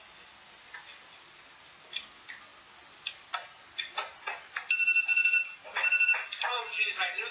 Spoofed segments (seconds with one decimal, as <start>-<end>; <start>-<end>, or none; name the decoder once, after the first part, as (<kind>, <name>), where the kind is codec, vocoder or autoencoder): none

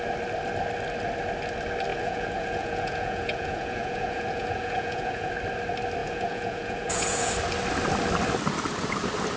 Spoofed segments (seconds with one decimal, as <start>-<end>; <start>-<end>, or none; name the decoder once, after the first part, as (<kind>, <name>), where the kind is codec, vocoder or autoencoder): 1.9-5.3 (vocoder, Vocos); 6.0-7.3

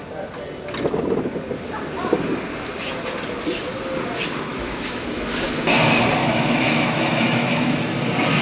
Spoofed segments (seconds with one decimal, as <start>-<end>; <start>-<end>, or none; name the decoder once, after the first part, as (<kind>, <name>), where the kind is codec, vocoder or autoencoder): 4.5-5.3 (autoencoder, DAC-VAE); 6.2-8.0